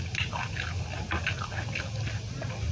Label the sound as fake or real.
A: real